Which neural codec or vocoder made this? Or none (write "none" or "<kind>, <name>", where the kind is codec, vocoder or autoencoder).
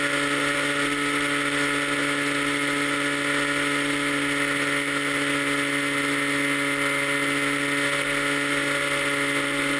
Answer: none